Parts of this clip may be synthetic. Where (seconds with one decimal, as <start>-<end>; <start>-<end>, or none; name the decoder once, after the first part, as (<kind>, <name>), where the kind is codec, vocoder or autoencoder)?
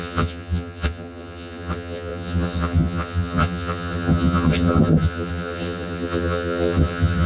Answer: 0.0-7.3 (vocoder, HiFi-GAN)